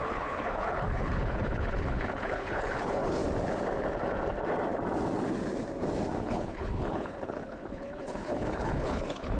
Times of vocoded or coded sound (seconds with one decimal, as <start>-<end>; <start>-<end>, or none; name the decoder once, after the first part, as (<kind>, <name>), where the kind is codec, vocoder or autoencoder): 0.0-3.2 (codec, HILCodec); 6.2-9.4